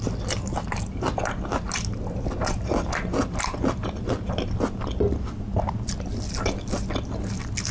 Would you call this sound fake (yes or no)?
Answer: no